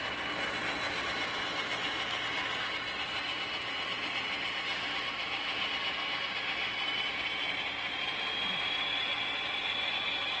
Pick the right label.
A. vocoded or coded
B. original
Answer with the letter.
B